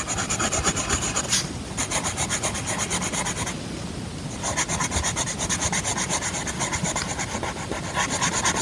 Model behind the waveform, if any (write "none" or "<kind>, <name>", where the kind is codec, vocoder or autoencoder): none